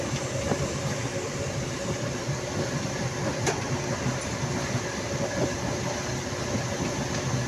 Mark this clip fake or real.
fake